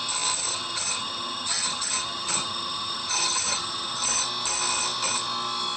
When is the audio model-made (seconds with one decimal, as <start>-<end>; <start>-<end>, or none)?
0.5-4.0